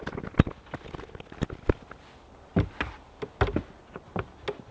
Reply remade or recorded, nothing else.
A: recorded